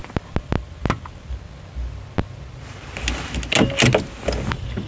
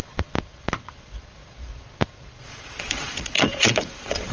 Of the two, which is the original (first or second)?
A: first